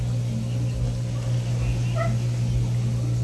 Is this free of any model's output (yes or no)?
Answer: yes